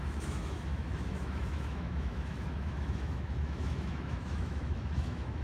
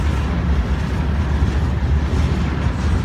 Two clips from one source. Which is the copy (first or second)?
first